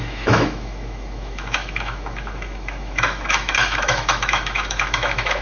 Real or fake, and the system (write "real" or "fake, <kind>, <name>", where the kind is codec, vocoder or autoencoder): fake, autoencoder, DAC-VAE